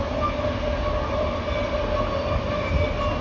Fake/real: real